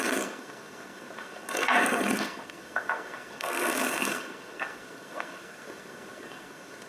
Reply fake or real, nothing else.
fake